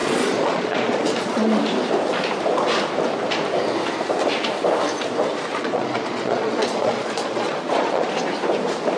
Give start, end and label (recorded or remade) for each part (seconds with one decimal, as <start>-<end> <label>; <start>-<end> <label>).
0.0-1.6 remade; 1.6-5.5 recorded; 5.5-8.1 remade; 8.1-9.0 recorded